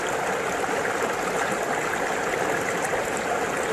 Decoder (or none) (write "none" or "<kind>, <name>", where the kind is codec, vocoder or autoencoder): none